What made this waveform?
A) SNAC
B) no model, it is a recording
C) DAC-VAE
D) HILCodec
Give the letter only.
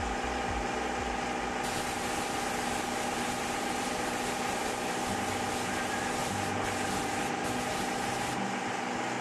B